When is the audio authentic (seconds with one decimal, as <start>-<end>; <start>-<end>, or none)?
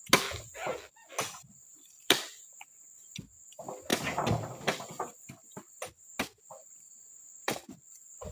0.0-1.6; 2.7-3.9; 5.9-6.6; 7.7-8.3